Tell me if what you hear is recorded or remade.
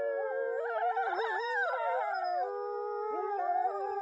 recorded